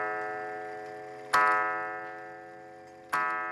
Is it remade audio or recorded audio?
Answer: recorded